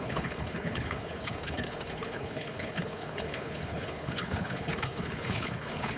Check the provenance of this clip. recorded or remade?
remade